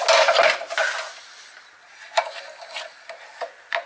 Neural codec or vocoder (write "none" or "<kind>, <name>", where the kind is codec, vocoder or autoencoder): none